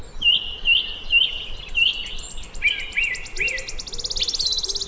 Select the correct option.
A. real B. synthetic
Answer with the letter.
A